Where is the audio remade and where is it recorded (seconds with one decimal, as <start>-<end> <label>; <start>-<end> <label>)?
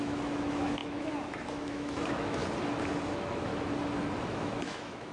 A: 0.0-2.4 remade; 2.4-3.1 recorded; 3.1-3.5 remade; 3.5-4.3 recorded; 4.3-5.1 remade